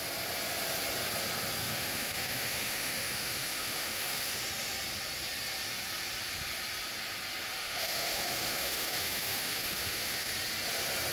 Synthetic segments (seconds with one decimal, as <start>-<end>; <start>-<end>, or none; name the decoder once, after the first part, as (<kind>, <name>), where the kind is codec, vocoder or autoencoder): 1.6-4.4 (autoencoder, DAC-VAE); 7.6-10.3

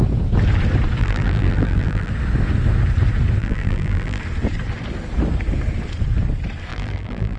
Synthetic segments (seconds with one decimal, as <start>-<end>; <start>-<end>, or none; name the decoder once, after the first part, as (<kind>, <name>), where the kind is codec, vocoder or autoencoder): 1.0-2.1 (vocoder, BigVGAN v2); 3.4-4.2; 6.7-7.4

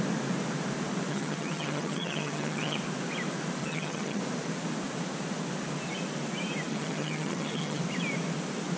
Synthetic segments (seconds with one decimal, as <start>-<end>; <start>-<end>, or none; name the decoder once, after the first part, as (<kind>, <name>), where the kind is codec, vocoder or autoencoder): 1.1-2.8 (vocoder, HiFi-GAN); 3.6-4.2; 6.7-7.8

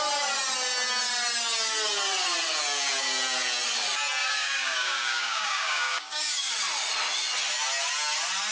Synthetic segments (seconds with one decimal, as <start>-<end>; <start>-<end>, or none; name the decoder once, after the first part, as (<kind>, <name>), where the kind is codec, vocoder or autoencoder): 4.2-6.5 (codec, DAC)

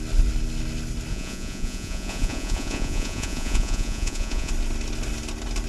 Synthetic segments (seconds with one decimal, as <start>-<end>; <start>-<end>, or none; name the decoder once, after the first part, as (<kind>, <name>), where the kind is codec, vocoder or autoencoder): 1.1-4.5 (vocoder, Vocos)

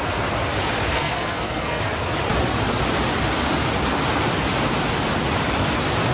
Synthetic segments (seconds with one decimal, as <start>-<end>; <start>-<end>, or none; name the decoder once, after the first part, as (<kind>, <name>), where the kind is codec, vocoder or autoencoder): 0.9-1.8 (codec, SNAC)

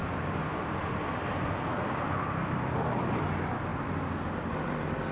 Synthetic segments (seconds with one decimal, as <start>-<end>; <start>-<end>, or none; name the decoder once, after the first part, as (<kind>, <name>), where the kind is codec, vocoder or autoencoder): none

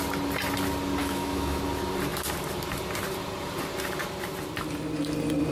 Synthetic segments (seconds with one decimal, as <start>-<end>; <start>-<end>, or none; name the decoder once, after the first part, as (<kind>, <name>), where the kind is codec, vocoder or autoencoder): 1.0-1.6 (autoencoder, DAC-VAE)